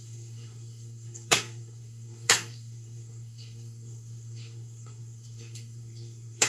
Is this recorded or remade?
remade